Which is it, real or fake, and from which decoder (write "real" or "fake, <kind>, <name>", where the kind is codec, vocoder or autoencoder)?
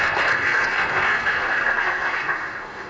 fake, codec, SNAC